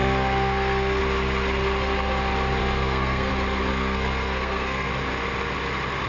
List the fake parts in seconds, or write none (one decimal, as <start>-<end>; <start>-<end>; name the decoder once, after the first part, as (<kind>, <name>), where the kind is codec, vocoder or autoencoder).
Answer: 0.0-1.0 (codec, SNAC); 2.6-3.3; 3.7-4.9